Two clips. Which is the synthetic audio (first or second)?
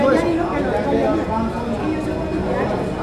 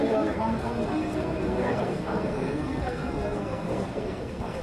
second